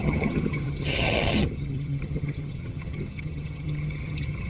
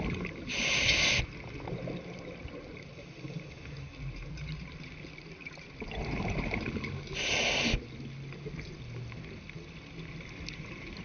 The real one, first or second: second